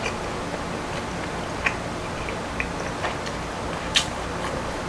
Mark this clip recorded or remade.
recorded